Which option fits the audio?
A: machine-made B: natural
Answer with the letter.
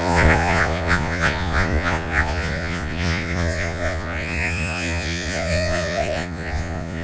A